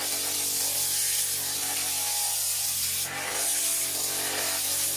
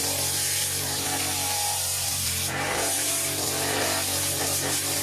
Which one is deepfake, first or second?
second